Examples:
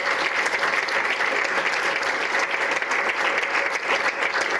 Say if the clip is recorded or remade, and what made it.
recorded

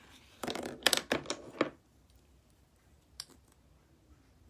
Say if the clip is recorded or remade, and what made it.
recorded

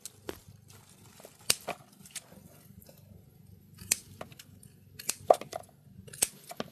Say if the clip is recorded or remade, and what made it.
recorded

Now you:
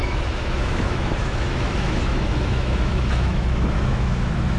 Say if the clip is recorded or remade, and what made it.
remade, autoencoder, DAC-VAE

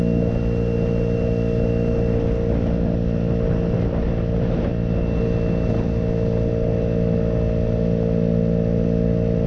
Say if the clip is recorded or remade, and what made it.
recorded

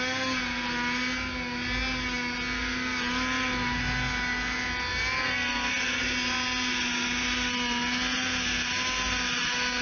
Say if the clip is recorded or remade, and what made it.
recorded